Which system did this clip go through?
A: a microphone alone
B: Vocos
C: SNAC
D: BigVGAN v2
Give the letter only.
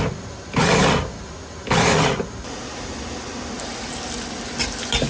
A